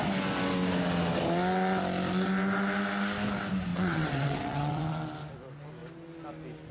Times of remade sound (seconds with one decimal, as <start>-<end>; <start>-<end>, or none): 3.7-4.8